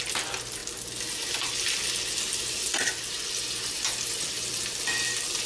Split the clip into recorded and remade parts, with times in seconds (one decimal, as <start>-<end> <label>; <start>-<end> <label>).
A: 0.0-5.5 recorded